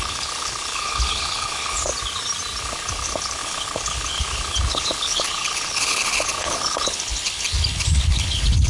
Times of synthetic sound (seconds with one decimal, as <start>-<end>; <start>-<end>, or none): 0.0-1.9; 2.6-8.7